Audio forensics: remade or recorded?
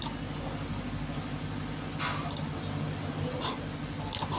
recorded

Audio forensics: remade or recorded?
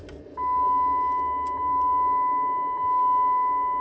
recorded